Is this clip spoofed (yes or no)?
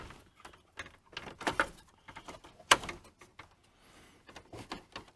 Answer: no